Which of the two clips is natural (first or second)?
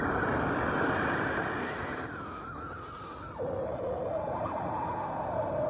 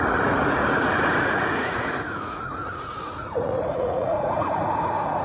first